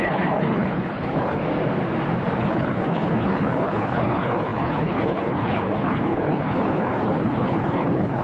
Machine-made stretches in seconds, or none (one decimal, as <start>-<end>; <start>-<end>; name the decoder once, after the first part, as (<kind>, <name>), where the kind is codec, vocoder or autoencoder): 0.0-1.4 (codec, HILCodec); 2.4-8.2